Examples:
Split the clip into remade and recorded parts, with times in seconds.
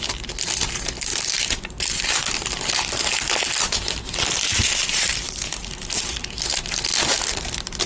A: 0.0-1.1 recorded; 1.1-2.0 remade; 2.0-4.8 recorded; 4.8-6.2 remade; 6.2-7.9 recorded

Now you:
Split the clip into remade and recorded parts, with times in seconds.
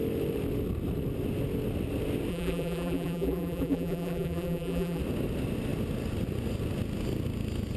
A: 0.0-2.3 recorded; 2.3-5.0 remade; 5.0-7.8 recorded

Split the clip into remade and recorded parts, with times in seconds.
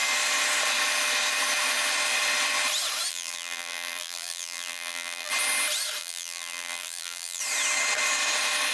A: 0.0-3.1 recorded; 3.1-5.3 remade; 5.3-6.0 recorded; 6.0-7.4 remade; 7.4-8.7 recorded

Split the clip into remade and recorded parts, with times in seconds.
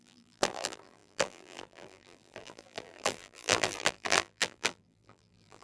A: 0.0-5.6 remade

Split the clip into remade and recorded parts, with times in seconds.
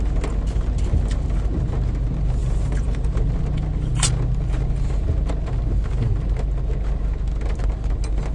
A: 0.0-2.4 recorded; 2.4-3.3 remade; 3.3-8.3 recorded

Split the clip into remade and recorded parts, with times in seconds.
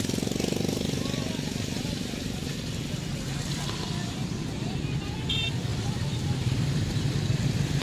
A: 0.0-5.7 recorded; 5.7-7.8 remade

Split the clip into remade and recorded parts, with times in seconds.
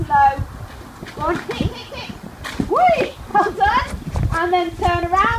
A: 0.0-3.3 recorded; 3.3-4.2 remade; 4.2-5.4 recorded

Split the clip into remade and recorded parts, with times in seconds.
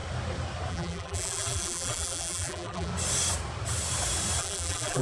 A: 0.0-0.7 recorded; 0.7-2.9 remade; 2.9-4.4 recorded; 4.4-5.0 remade